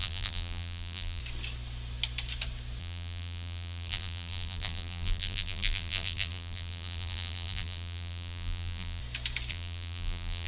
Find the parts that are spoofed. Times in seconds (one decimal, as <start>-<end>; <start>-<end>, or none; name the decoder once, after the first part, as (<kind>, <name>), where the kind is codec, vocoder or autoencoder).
0.0-1.2 (vocoder, BigVGAN v2); 2.8-9.0; 9.5-10.5